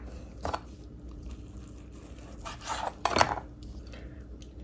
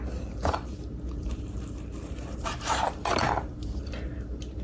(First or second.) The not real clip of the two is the second